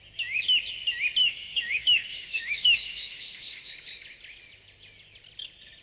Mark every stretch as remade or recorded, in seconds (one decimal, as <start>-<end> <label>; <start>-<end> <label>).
0.0-1.2 recorded; 1.2-3.7 remade; 3.7-5.8 recorded